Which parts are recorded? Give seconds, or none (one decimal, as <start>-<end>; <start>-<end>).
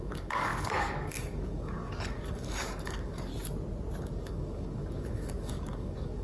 3.3-4.0